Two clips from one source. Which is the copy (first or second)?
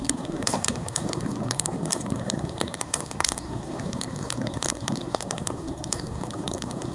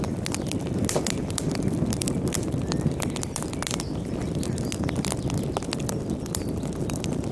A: first